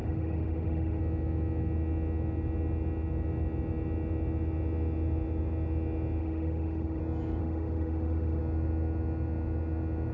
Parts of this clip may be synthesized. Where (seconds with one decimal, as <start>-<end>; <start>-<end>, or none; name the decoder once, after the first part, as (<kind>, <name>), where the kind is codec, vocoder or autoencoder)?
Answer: 0.0-1.0 (autoencoder, DAC-VAE); 6.2-7.0; 7.4-8.4